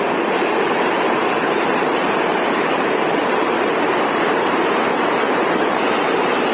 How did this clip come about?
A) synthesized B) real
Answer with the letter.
A